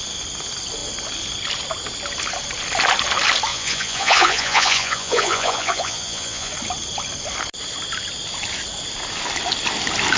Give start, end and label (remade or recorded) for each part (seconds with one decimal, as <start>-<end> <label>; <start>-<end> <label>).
0.0-3.5 recorded; 3.5-6.5 remade; 6.5-10.2 recorded